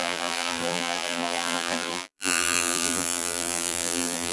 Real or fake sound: fake